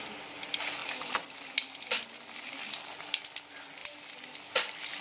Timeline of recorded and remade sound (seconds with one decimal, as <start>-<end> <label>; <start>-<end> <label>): 0.0-5.0 recorded